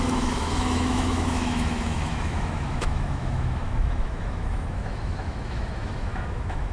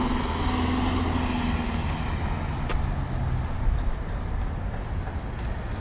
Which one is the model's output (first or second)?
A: first